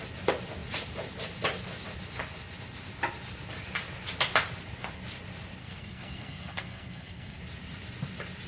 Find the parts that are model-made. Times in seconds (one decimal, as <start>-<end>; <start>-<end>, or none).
5.6-7.4